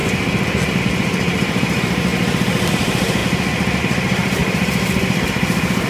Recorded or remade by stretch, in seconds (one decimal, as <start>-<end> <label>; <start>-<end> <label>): 0.0-0.8 recorded; 0.8-2.1 remade; 2.1-2.7 recorded; 2.7-3.2 remade; 3.2-3.8 recorded; 3.8-4.4 remade; 4.4-5.2 recorded; 5.2-5.9 remade